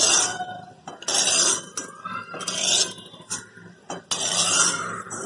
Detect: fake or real real